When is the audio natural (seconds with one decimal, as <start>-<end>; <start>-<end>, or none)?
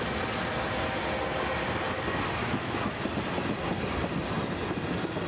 0.0-2.4; 3.0-5.3